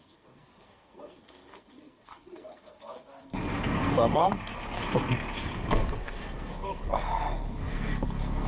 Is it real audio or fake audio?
fake